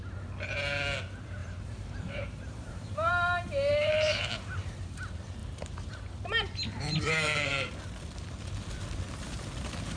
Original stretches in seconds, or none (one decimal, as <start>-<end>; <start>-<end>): 0.0-1.4; 3.1-3.7; 4.9-5.4; 7.7-10.0